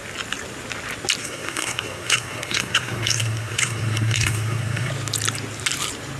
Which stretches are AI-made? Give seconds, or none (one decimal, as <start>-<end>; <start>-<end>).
1.2-4.9